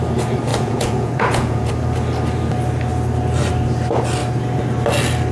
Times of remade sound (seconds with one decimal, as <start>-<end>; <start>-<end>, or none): 0.5-1.7